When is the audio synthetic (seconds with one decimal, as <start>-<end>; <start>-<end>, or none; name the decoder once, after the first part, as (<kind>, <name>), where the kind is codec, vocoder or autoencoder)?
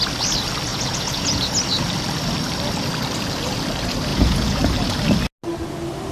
0.7-1.4 (vocoder, Vocos); 4.1-4.6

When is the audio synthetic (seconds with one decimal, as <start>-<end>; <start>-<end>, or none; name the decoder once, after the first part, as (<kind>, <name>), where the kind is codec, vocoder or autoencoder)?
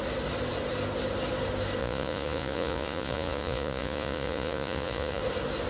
1.8-5.2 (vocoder, Vocos)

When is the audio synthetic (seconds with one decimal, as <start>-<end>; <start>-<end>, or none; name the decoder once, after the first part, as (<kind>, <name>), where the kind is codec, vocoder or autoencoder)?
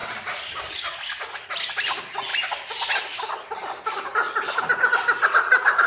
none